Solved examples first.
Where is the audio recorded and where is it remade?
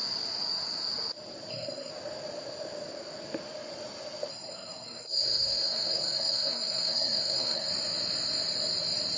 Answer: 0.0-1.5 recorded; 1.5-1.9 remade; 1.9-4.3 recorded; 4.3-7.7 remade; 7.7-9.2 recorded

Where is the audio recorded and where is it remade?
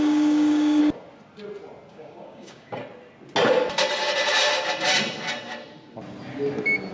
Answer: 0.0-0.8 remade; 0.8-1.9 recorded; 1.9-2.8 remade; 2.8-6.9 recorded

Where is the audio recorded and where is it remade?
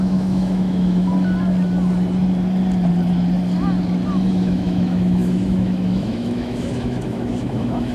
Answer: 0.0-1.1 remade; 1.1-4.3 recorded; 4.3-7.9 remade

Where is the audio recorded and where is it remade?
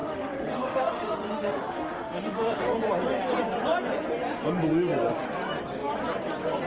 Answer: 0.0-2.6 remade; 2.6-6.7 recorded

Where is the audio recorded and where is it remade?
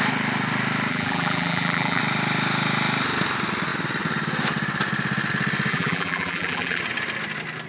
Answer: 0.0-0.9 recorded; 0.9-2.0 remade; 2.0-5.7 recorded; 5.7-6.8 remade; 6.8-7.7 recorded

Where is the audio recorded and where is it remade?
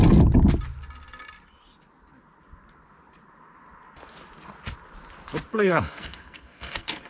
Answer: 0.0-5.5 recorded; 5.5-7.1 remade